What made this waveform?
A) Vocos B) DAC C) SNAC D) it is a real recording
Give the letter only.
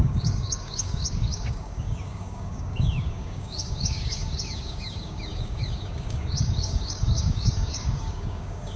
B